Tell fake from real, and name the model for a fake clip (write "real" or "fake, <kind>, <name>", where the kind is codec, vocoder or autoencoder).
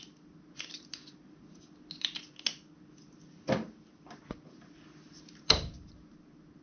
real